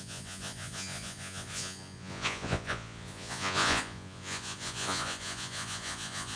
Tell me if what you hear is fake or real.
fake